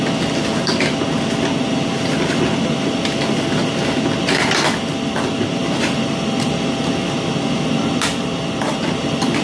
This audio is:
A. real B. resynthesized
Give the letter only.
A